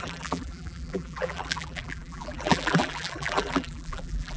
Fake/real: fake